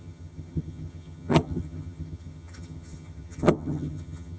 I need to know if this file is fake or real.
fake